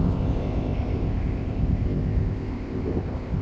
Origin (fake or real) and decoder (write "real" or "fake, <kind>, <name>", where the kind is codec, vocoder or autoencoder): fake, codec, ZipCodec